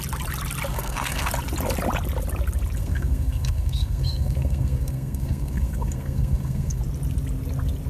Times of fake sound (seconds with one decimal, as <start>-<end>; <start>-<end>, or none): 0.7-1.3; 2.8-6.8